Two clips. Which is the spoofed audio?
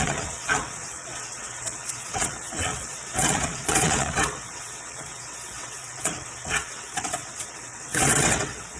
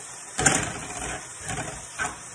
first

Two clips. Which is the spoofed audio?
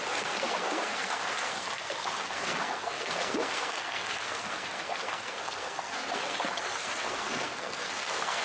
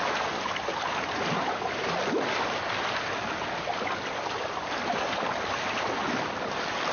first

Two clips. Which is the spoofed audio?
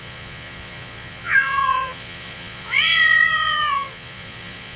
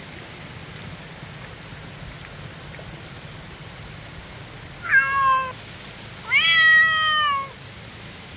first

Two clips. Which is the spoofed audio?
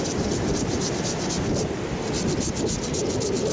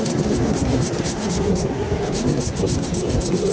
second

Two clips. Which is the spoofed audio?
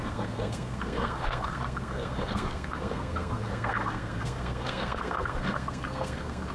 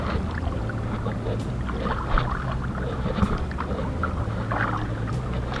first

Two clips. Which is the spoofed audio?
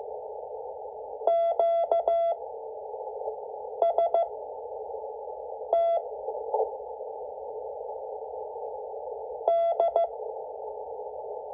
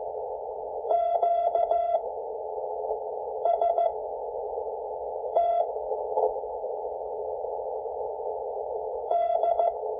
second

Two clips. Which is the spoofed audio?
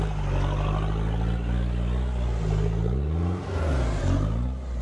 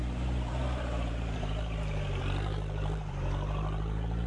second